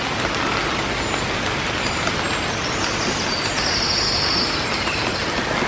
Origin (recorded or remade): recorded